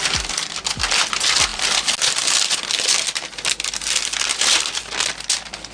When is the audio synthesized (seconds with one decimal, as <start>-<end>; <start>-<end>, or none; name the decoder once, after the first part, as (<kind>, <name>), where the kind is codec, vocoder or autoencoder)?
none